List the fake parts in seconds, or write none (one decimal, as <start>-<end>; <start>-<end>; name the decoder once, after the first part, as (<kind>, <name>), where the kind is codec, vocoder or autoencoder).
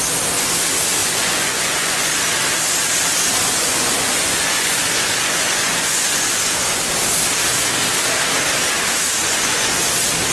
1.0-2.1 (vocoder, Vocos); 3.4-6.8; 9.2-9.8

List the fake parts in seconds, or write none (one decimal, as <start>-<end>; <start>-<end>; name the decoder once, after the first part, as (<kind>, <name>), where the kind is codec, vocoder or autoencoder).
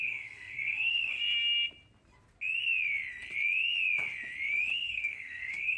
0.0-1.2 (codec, SNAC); 4.7-5.8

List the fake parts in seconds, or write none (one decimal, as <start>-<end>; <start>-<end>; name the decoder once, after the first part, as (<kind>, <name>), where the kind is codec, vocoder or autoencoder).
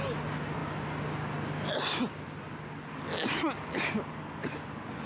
none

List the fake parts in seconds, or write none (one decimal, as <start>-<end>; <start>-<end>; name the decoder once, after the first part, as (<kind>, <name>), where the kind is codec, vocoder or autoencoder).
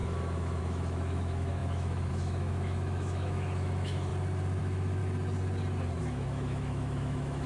0.0-4.1 (autoencoder, DAC-VAE); 4.6-5.0; 6.0-7.5